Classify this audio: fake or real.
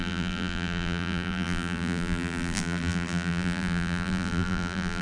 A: fake